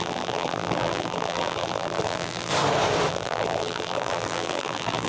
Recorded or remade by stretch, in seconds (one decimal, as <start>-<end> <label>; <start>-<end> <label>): 0.0-2.5 remade; 2.5-3.1 recorded; 3.1-5.1 remade